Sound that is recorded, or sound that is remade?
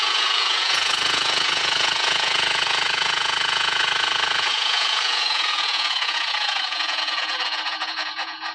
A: remade